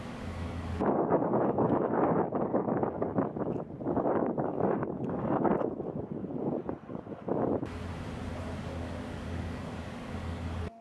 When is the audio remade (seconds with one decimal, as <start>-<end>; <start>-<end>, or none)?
0.0-3.1; 4.1-5.5; 8.6-10.8